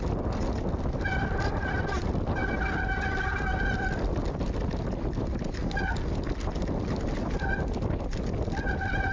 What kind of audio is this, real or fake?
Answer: real